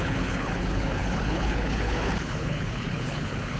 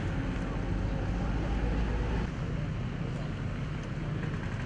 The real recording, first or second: second